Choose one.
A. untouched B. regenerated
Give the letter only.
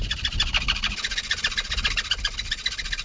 A